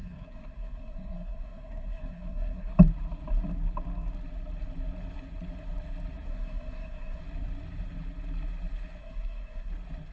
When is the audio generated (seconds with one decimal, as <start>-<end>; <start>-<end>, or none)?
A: 0.0-2.7; 6.3-7.2; 9.0-9.7